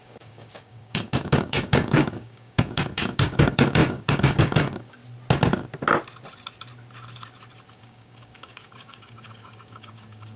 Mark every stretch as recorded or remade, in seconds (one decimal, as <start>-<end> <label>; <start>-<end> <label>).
0.0-5.0 remade; 5.0-7.7 recorded; 7.7-10.4 remade